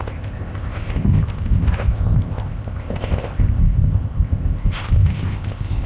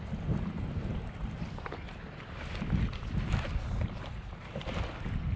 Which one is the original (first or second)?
second